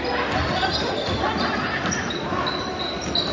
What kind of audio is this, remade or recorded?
recorded